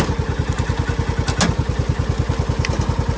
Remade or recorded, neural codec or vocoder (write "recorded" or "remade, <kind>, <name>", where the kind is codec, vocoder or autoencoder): recorded